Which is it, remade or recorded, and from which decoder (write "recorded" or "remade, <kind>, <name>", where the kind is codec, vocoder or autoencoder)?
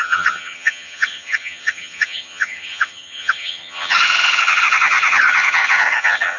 remade, vocoder, HiFi-GAN